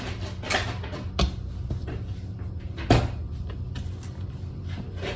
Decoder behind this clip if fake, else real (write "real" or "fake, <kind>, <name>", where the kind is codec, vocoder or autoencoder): real